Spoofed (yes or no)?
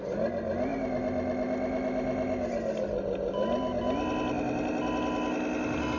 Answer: no